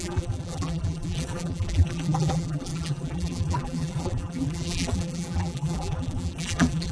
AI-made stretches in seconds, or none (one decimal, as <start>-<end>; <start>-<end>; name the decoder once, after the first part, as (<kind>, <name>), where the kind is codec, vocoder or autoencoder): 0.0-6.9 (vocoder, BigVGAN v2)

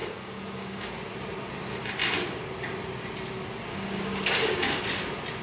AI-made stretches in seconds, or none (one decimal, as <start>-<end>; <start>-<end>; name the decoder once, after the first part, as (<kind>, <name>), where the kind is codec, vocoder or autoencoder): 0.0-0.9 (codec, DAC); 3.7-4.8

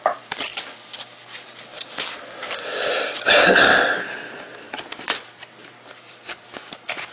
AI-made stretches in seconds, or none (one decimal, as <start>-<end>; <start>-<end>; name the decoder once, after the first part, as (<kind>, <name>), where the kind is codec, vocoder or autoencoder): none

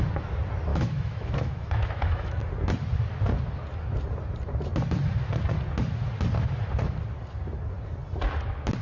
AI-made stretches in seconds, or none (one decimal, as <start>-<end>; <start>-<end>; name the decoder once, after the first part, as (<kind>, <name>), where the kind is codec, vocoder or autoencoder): 0.7-2.4 (autoencoder, DAC-VAE)